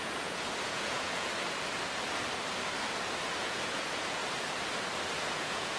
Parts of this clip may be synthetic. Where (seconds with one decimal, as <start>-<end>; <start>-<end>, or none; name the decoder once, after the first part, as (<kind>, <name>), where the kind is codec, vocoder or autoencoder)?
0.0-1.3 (vocoder, Vocos); 3.4-4.2; 5.2-5.8